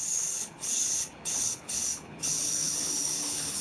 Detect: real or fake fake